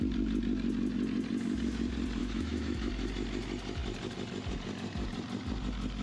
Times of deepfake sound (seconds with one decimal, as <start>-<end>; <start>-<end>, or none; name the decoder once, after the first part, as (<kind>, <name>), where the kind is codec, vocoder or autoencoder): 2.2-2.9 (autoencoder, DAC-VAE)